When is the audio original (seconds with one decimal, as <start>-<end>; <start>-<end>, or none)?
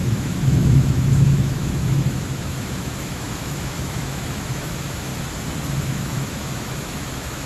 5.1-5.8